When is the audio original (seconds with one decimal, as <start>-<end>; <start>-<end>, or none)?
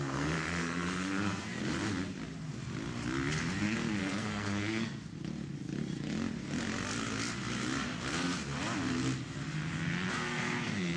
1.6-4.0; 5.1-10.1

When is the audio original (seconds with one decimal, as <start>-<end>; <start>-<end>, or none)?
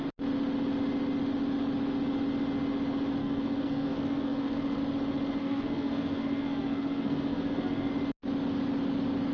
0.0-3.2; 4.8-5.4; 7.9-9.3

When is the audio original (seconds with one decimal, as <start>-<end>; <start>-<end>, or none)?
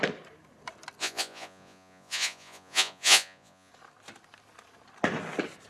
0.0-1.0; 3.7-5.7